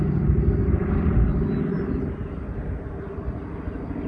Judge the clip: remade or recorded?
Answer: recorded